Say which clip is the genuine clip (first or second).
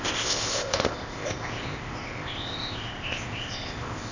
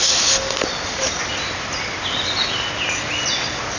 second